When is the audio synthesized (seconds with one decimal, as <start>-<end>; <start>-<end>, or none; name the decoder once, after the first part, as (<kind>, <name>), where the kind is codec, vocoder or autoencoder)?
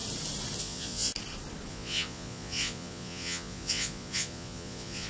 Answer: 0.6-1.1 (vocoder, Vocos); 1.7-5.1